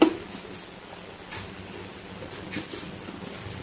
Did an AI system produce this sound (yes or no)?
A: no